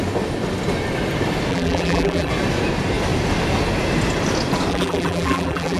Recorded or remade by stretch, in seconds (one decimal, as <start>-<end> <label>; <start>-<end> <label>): 0.0-1.5 recorded; 1.5-2.3 remade; 2.3-4.7 recorded; 4.7-5.8 remade